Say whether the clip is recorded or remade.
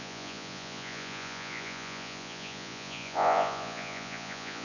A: remade